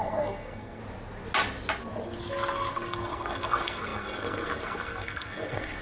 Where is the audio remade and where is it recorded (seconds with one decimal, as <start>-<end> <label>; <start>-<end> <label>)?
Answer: 0.0-0.8 remade; 0.8-2.7 recorded; 2.7-5.8 remade